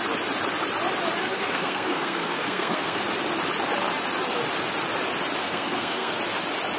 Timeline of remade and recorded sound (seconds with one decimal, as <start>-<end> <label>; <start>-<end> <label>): 0.0-1.2 recorded; 1.2-3.0 remade; 3.0-5.4 recorded; 5.4-6.1 remade; 6.1-6.8 recorded